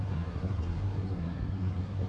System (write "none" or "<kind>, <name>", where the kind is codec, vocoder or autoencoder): codec, SNAC